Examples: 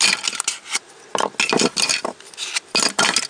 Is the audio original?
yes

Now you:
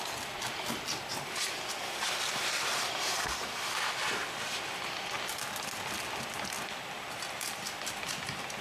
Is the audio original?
yes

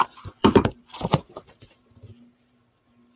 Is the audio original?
no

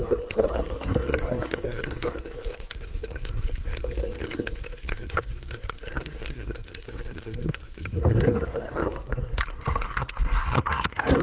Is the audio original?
no